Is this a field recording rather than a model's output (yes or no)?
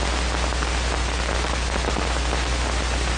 yes